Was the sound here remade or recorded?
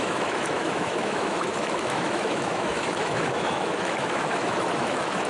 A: remade